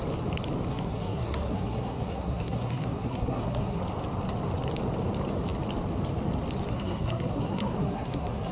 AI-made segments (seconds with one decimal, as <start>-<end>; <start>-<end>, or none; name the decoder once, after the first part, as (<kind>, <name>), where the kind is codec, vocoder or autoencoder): 0.7-3.8 (codec, SNAC); 6.7-8.5